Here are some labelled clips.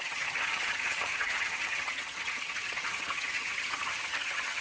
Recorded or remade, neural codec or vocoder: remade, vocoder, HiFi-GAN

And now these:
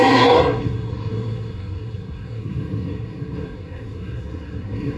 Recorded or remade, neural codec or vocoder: remade, codec, SNAC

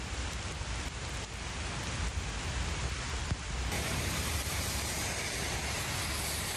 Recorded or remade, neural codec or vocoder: recorded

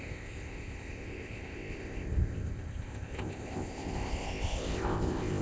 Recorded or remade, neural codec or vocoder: remade, codec, ZipCodec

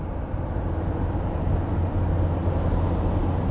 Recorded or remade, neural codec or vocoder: recorded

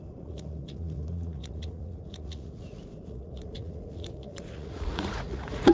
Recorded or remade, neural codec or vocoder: remade, vocoder, Vocos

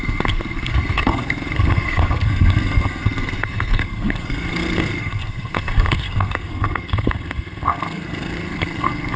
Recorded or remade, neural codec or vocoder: remade, codec, SNAC